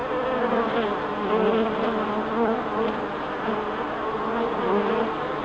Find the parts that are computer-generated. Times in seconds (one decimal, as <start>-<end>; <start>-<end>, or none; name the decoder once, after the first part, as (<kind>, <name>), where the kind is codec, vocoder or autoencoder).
none